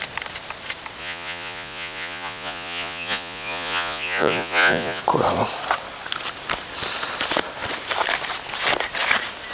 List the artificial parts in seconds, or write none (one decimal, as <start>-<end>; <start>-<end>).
1.0-5.0